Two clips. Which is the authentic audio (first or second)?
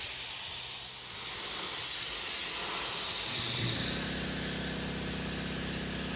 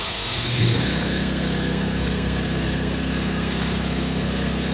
first